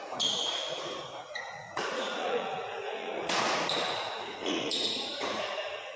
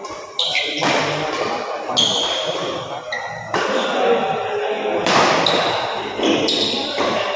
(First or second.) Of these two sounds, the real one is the second